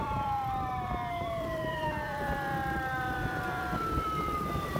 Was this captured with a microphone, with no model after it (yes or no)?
no